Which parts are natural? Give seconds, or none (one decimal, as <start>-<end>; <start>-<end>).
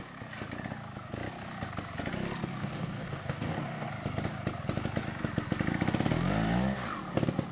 0.0-2.5; 3.9-7.5